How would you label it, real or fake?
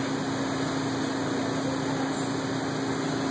real